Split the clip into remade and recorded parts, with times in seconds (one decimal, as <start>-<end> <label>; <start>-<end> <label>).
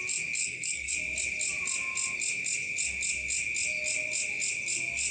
0.0-0.4 recorded; 0.4-0.9 remade; 0.9-5.1 recorded